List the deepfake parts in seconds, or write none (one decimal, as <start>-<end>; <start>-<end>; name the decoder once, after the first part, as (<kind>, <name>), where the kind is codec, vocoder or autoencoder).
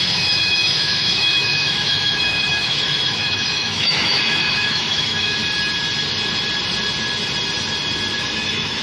0.0-5.4 (autoencoder, DAC-VAE); 8.2-8.8